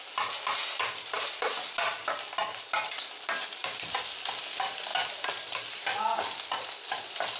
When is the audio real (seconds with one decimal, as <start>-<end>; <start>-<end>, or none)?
0.0-7.4